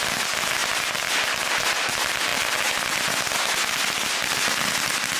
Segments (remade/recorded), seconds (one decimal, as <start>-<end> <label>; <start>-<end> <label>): 0.0-5.2 recorded